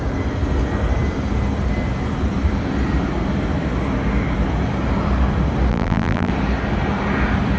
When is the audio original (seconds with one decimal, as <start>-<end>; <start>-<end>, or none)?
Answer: 0.0-5.7; 6.3-7.6